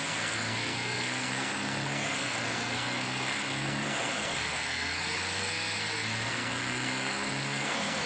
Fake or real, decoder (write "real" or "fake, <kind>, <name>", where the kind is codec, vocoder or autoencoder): fake, codec, SNAC